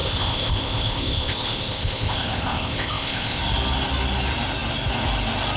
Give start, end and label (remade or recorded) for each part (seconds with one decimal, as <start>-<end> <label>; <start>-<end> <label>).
0.0-3.4 remade; 3.4-5.6 recorded